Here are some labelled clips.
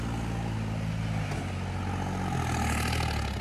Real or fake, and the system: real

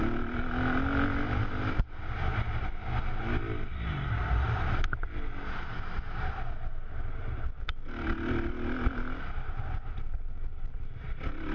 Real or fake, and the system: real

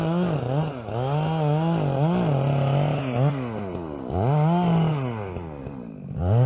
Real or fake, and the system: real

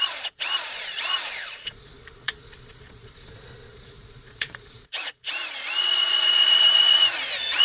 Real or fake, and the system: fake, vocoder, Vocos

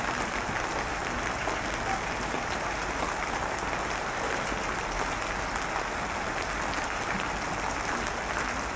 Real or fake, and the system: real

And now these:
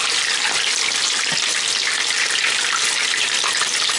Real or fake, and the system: real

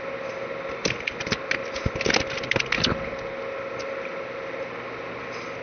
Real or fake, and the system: real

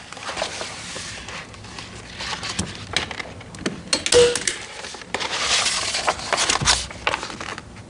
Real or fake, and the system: real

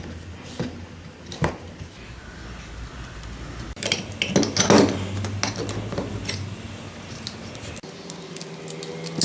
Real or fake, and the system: real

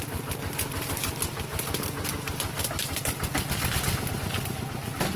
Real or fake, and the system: real